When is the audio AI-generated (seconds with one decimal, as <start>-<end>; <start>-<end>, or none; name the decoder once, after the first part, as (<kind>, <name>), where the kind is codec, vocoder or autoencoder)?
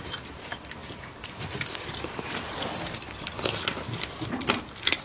0.8-3.8 (vocoder, BigVGAN v2)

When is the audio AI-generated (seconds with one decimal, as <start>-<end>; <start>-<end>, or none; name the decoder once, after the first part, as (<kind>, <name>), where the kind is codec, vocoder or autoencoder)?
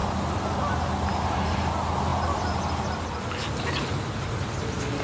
none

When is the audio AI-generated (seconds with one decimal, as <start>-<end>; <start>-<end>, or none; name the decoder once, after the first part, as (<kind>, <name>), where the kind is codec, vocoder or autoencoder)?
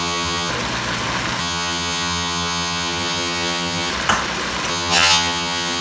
0.0-0.5 (vocoder, HiFi-GAN); 1.4-3.9; 4.7-5.8